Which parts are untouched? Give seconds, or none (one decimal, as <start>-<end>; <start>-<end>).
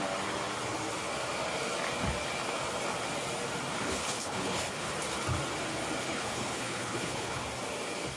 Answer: 0.0-3.7; 4.9-6.0; 7.4-8.2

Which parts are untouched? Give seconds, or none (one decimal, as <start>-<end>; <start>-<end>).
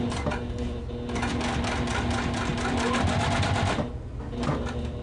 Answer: 0.0-5.0